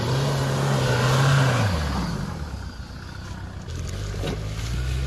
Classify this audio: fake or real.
real